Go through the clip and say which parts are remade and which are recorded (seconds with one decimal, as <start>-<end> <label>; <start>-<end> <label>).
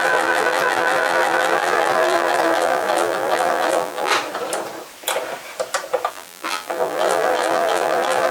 0.0-4.1 remade; 4.1-6.1 recorded; 6.1-8.3 remade